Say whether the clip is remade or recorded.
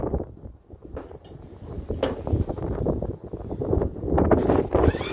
recorded